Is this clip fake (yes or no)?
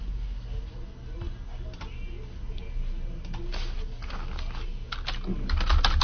no